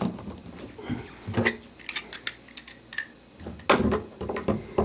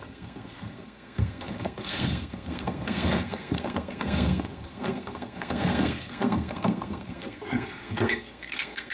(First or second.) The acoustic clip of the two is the first